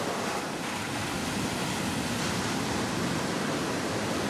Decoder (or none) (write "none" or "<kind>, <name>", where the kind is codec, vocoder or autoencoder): none